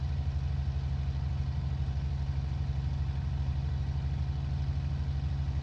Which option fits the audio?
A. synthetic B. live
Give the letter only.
B